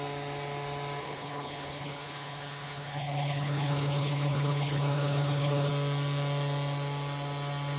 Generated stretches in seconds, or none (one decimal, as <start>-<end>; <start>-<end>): 1.0-5.7